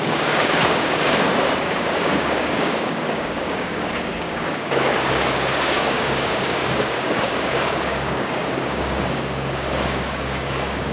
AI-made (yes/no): yes